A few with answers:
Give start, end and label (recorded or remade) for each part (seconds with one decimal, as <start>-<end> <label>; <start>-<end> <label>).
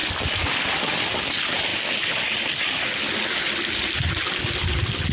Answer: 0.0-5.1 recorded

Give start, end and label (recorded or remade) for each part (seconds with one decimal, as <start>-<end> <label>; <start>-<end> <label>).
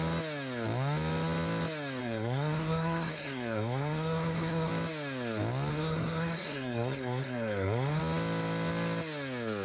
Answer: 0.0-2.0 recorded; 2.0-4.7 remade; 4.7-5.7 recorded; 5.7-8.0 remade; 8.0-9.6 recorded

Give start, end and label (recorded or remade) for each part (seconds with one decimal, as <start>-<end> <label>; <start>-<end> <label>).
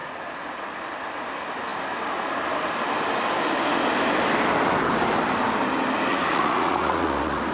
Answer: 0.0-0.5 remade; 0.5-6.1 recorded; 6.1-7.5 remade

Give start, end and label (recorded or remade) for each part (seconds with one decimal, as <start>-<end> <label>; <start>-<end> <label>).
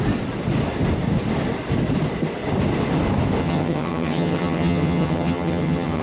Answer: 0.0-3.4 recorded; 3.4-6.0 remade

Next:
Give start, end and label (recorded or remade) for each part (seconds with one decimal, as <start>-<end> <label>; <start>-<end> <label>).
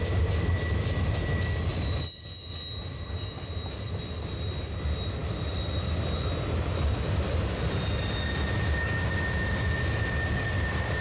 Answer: 0.0-11.0 recorded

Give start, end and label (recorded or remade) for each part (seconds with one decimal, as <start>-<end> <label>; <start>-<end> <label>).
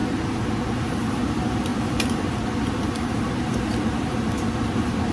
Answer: 0.0-1.1 recorded; 1.1-5.1 remade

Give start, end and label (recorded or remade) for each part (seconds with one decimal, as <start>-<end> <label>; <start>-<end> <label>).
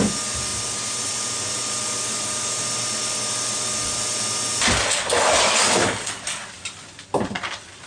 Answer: 0.0-7.9 recorded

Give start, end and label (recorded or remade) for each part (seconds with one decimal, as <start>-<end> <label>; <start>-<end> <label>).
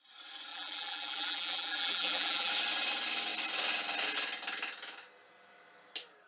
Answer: 0.0-0.5 recorded; 0.5-2.5 remade; 2.5-6.3 recorded